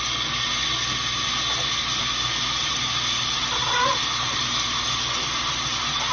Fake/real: real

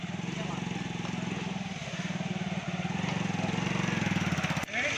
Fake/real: real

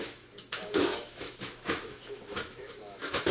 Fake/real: fake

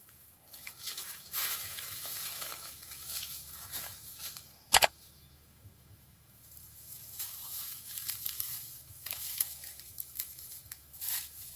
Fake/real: fake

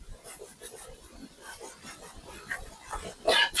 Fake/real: real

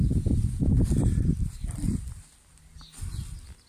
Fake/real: real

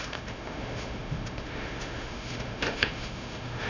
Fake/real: fake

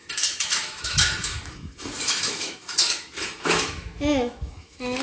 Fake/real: fake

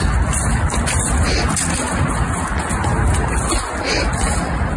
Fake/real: real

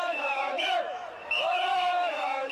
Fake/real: fake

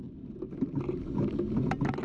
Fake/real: real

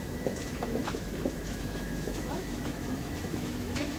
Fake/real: fake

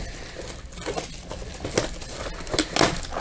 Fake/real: real